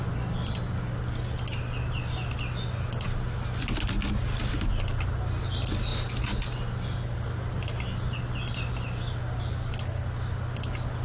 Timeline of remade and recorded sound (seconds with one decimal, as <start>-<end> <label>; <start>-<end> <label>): 0.0-11.0 recorded

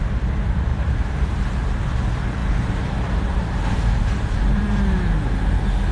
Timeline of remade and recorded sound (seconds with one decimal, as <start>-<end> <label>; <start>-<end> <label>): 0.0-0.7 recorded; 0.7-1.4 remade; 1.4-2.4 recorded; 2.4-5.0 remade; 5.0-5.9 recorded

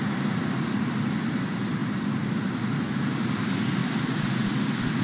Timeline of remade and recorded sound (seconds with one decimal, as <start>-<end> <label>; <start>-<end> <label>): 0.0-3.8 recorded; 3.8-5.0 remade

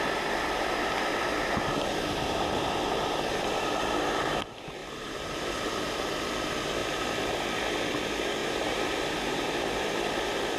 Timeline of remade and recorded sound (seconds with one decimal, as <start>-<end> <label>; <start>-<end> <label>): 0.0-4.8 recorded; 4.8-5.5 remade; 5.5-8.4 recorded; 8.4-9.8 remade; 9.8-10.6 recorded

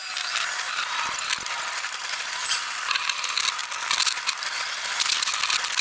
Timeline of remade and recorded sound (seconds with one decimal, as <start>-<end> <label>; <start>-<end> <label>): 0.0-5.8 recorded

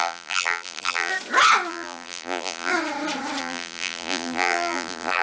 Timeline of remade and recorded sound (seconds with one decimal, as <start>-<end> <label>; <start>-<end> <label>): 0.0-1.1 remade; 1.1-1.7 recorded; 1.7-2.7 remade; 2.7-3.4 recorded; 3.4-5.2 remade

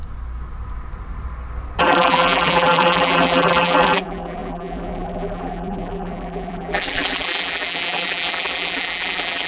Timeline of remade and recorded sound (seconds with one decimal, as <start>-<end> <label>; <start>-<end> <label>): 0.0-1.8 recorded; 1.8-9.5 remade

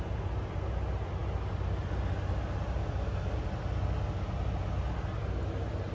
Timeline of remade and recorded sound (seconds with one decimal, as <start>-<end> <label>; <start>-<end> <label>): 0.0-5.9 recorded